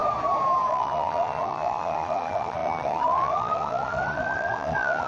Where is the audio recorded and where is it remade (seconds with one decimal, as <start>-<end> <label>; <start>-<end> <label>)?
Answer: 0.0-0.7 recorded; 0.7-5.1 remade